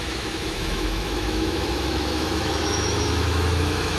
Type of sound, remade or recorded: remade